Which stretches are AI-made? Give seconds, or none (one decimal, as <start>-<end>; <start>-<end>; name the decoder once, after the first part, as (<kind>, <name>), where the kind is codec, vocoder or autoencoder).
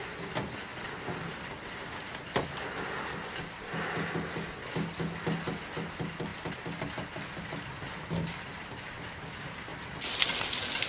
none